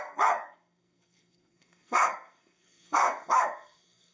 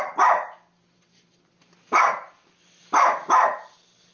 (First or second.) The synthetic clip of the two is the first